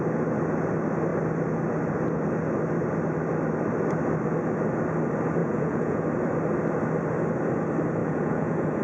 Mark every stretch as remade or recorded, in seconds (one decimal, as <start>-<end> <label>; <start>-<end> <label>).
0.0-5.4 recorded; 5.4-6.0 remade; 6.0-8.0 recorded; 8.0-8.8 remade